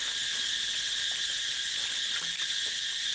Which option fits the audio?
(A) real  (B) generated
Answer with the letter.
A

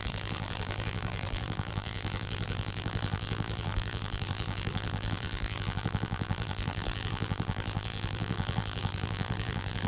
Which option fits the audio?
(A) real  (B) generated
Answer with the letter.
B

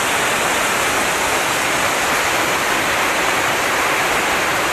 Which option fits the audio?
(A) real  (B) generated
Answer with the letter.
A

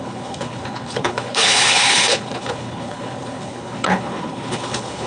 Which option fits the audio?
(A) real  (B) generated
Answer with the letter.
B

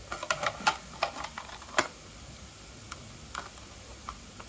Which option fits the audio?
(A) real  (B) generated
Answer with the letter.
A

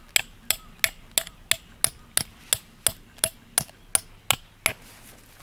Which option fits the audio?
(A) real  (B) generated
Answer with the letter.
A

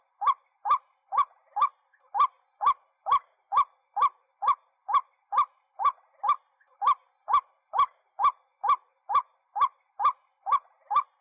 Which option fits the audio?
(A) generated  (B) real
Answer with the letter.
B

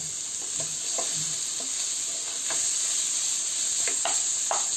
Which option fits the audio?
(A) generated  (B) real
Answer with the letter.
B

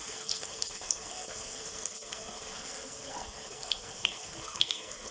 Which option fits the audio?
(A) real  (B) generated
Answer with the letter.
B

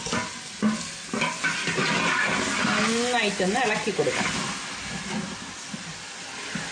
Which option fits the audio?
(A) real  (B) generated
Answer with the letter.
A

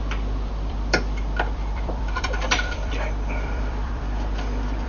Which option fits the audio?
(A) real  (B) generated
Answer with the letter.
B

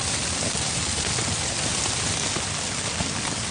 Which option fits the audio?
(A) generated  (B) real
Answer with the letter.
B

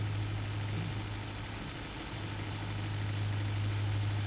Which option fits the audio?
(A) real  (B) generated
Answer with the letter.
A